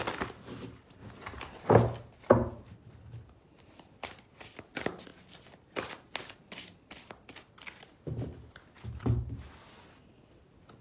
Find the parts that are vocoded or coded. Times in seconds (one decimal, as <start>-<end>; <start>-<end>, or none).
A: none